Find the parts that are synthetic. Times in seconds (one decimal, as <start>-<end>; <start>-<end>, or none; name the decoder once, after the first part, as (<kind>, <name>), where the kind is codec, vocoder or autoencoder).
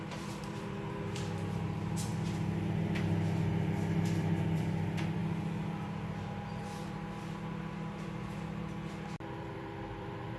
0.0-2.1 (vocoder, BigVGAN v2); 2.8-5.2; 9.3-10.4